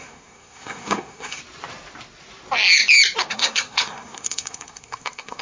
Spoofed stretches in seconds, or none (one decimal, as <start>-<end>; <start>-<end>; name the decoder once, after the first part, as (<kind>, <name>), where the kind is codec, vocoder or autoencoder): 0.0-1.4 (codec, SNAC); 3.3-5.4